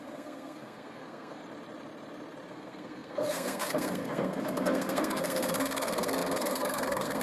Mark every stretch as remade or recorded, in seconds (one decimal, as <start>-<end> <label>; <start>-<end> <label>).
0.0-1.4 remade; 1.4-2.5 recorded; 2.5-7.2 remade